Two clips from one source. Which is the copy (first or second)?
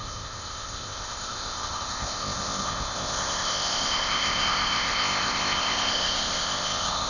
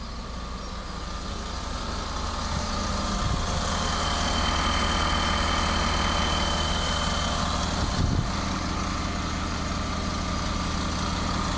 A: first